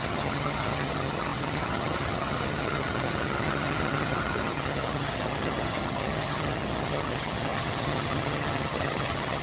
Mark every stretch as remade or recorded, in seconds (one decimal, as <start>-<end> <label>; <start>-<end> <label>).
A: 0.0-9.4 remade